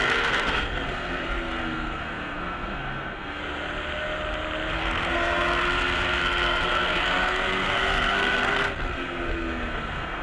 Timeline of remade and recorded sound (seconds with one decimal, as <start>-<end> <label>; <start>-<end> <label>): 0.0-3.4 remade; 3.4-4.7 recorded; 4.7-10.2 remade